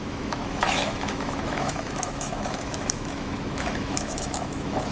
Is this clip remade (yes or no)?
yes